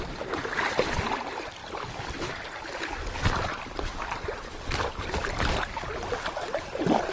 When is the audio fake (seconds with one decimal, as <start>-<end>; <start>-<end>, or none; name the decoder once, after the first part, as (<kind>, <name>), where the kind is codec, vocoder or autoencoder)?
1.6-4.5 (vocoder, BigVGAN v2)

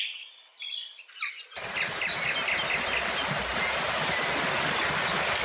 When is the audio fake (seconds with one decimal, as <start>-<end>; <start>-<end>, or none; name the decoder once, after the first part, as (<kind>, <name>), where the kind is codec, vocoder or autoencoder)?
3.5-4.2 (vocoder, BigVGAN v2)

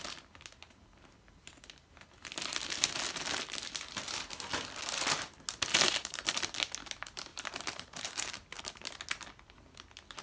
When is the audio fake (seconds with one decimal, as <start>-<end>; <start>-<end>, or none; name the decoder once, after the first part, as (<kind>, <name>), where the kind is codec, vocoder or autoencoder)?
5.7-6.3 (vocoder, BigVGAN v2); 7.3-8.6

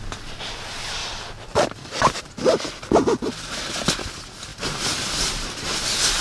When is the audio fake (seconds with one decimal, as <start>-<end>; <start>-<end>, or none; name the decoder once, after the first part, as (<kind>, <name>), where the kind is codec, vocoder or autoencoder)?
1.0-3.2 (vocoder, BigVGAN v2)